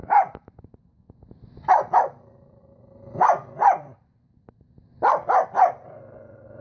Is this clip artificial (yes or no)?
no